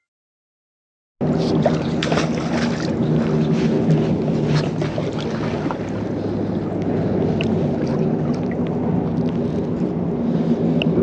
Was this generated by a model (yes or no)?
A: no